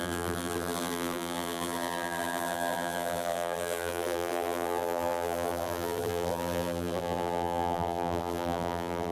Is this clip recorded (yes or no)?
no